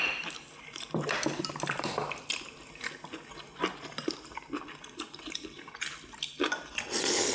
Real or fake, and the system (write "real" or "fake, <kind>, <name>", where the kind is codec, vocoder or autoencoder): fake, vocoder, BigVGAN v2